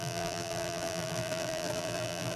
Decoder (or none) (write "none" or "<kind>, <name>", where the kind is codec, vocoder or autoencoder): vocoder, BigVGAN v2